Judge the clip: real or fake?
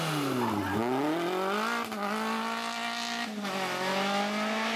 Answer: real